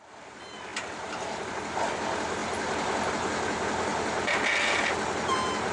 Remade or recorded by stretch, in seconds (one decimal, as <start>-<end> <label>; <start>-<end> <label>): 0.0-0.7 recorded; 0.7-1.5 remade; 1.5-2.4 recorded; 2.4-3.1 remade; 3.1-5.7 recorded